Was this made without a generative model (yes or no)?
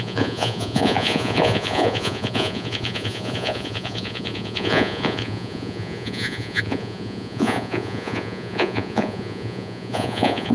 no